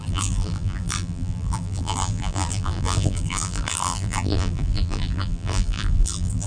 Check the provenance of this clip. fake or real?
fake